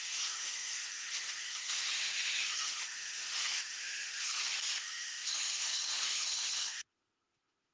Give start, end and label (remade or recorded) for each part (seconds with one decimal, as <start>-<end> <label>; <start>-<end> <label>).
0.0-7.7 remade